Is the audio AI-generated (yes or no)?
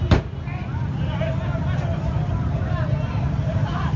no